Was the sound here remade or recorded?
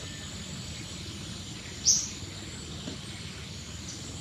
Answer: recorded